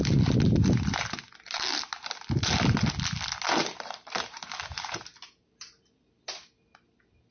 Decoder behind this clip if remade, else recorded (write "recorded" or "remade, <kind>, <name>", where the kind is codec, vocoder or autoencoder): recorded